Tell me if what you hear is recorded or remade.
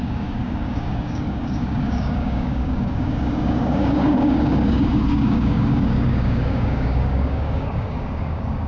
remade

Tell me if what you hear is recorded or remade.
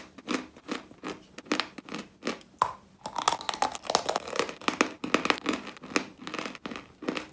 recorded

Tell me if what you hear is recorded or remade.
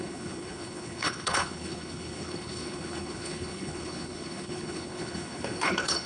remade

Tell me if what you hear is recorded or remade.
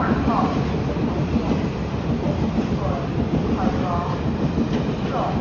recorded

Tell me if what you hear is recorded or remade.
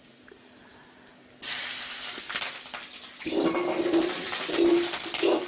recorded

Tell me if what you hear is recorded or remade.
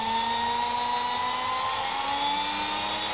recorded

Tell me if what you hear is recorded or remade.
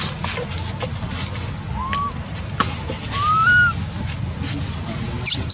recorded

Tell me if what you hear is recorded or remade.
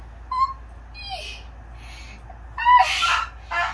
recorded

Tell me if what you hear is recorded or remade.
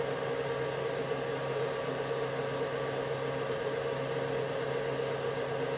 recorded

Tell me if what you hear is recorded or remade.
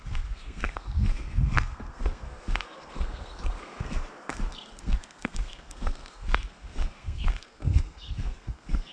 remade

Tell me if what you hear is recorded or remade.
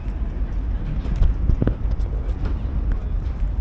recorded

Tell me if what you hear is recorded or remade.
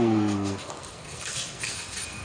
remade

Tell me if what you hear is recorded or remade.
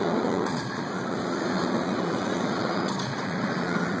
remade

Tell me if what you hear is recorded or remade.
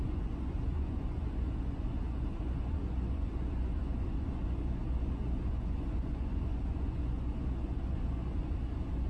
remade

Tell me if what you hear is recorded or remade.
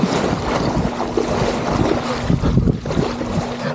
recorded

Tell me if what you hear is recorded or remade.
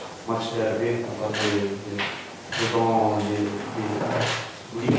recorded